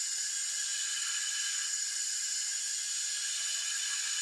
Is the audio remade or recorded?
recorded